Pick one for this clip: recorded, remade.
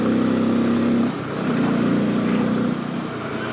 recorded